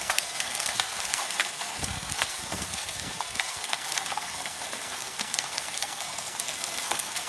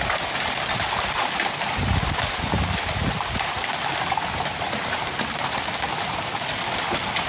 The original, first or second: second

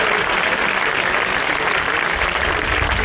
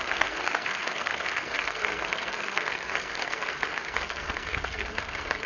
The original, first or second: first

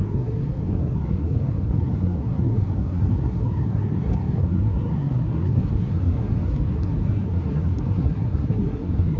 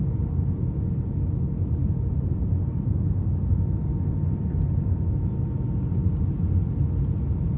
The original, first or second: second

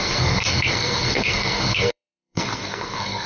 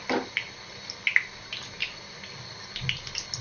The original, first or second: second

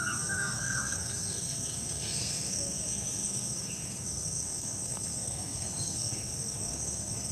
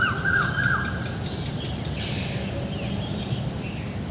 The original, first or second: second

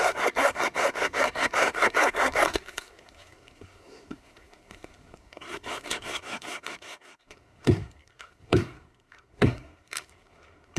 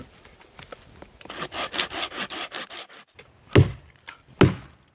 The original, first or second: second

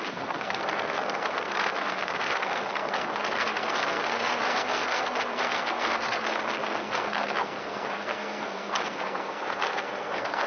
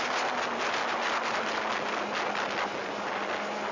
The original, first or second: second